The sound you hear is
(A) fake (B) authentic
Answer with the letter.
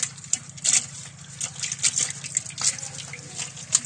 B